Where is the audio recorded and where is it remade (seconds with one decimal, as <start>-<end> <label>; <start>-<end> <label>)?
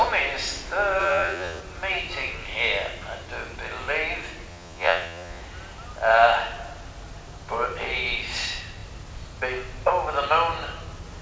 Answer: 0.0-1.0 recorded; 1.0-1.6 remade; 1.6-4.5 recorded; 4.5-5.4 remade; 5.4-11.2 recorded